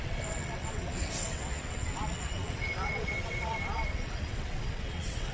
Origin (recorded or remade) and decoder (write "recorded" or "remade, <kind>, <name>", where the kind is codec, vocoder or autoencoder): remade, vocoder, WaveNeXt